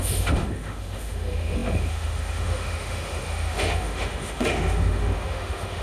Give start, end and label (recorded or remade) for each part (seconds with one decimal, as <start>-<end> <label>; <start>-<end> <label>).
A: 0.0-5.8 remade